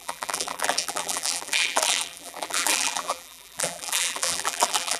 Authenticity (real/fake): fake